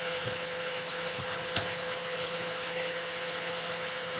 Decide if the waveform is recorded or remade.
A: remade